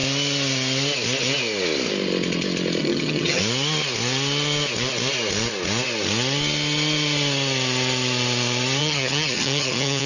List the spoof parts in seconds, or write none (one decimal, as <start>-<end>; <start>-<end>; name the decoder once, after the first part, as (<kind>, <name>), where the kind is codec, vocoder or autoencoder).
2.8-3.4 (vocoder, HiFi-GAN); 8.8-10.1